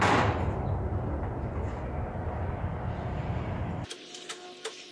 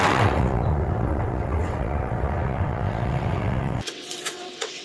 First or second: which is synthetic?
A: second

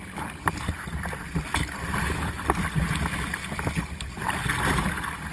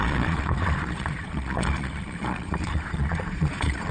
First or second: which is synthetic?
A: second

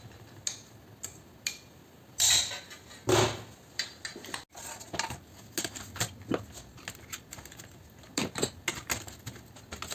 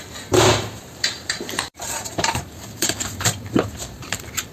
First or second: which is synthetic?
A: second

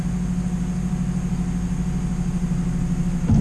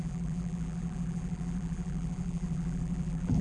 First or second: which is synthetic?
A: second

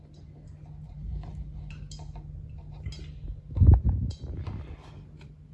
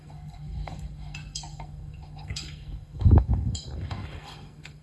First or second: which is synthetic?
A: second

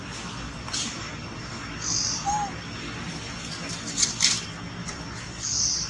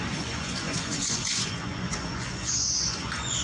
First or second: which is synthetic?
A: second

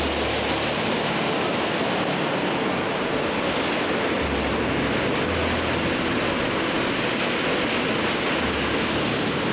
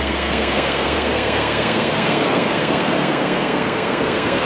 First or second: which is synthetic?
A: second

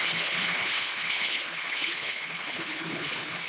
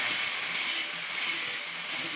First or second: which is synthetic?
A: first